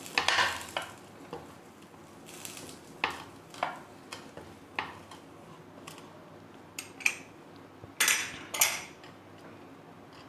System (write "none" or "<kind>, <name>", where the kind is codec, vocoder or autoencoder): none